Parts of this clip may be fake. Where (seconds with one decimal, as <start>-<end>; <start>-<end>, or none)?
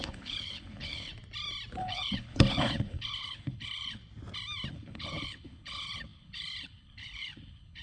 0.0-1.1; 1.8-4.0; 4.7-7.8